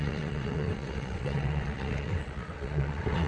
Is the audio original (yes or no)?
no